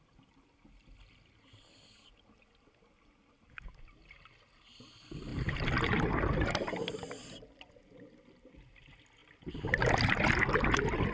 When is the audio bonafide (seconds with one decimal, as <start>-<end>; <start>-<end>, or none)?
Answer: 0.0-11.1

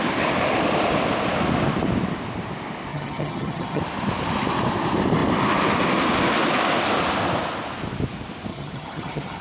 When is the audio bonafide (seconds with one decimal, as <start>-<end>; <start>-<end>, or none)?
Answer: 0.0-2.9; 3.8-8.5

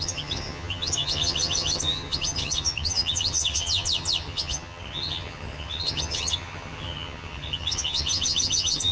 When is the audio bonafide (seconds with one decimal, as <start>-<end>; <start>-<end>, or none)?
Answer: none

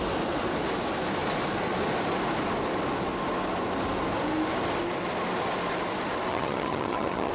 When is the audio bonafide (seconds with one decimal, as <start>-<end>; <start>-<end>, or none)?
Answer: 0.0-6.3